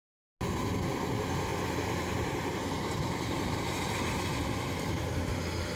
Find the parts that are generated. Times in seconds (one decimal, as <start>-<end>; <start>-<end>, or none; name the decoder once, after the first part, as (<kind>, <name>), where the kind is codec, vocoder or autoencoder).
1.5-3.8 (vocoder, BigVGAN v2)